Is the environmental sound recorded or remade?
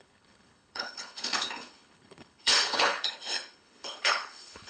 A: remade